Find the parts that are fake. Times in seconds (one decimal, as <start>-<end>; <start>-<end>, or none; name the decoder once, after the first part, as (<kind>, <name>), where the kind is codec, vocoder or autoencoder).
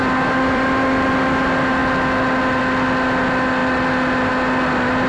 0.0-1.1 (vocoder, BigVGAN v2); 1.8-2.6; 3.6-4.3